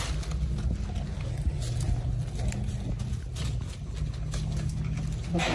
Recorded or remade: recorded